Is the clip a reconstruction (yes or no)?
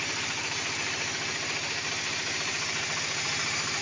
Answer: yes